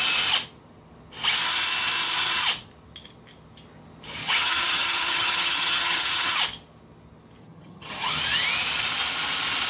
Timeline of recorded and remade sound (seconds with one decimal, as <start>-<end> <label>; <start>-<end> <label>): 0.0-4.2 recorded; 4.2-6.3 remade; 6.3-7.4 recorded; 7.4-8.2 remade; 8.2-9.7 recorded